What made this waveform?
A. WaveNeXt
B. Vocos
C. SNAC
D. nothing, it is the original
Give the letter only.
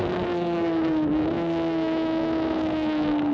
C